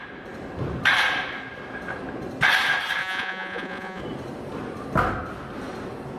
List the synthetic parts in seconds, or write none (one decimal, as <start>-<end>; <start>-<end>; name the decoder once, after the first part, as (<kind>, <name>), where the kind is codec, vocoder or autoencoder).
3.0-4.0 (vocoder, Vocos)